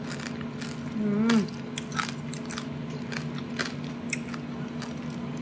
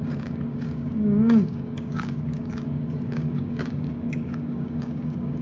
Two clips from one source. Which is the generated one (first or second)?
second